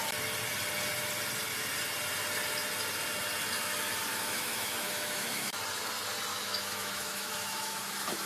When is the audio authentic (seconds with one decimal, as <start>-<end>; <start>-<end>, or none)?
0.0-4.1; 5.6-6.3